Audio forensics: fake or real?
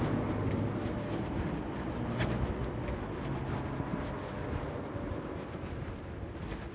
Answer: real